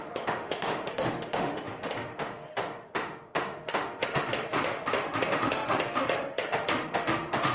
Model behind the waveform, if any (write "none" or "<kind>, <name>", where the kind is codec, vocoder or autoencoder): autoencoder, DAC-VAE